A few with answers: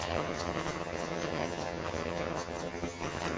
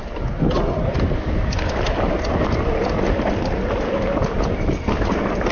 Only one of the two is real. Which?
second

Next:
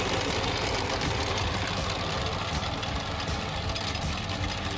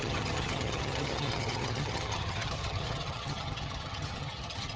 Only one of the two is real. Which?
first